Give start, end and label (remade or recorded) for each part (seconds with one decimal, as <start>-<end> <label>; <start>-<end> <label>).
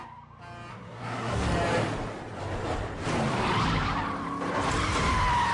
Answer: 0.0-0.7 recorded; 0.7-1.4 remade; 1.4-5.5 recorded